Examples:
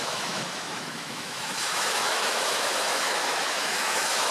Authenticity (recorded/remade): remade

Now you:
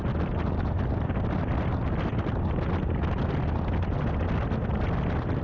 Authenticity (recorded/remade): recorded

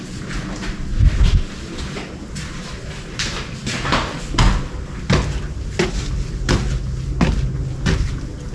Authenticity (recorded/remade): recorded